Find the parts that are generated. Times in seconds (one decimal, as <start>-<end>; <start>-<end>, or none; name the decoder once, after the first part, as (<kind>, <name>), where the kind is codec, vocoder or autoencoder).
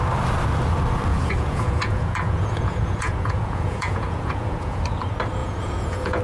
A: 1.1-4.8 (vocoder, Vocos); 5.4-6.2